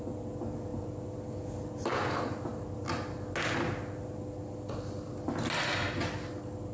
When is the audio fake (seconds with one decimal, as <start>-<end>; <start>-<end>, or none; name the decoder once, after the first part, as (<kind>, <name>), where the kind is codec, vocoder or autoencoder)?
none